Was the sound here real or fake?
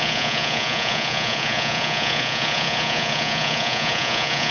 fake